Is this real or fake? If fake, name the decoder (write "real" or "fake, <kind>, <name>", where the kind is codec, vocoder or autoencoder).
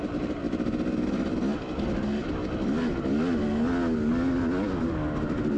real